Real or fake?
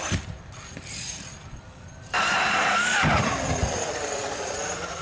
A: fake